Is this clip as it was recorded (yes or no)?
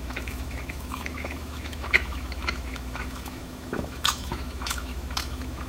no